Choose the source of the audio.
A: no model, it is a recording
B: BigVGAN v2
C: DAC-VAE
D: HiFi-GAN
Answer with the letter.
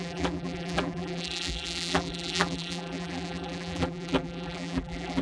B